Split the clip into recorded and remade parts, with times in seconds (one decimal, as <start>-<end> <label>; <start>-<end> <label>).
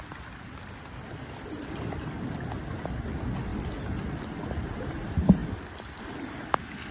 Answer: 0.0-6.9 recorded